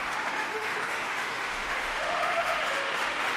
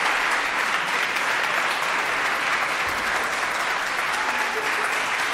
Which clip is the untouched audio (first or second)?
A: second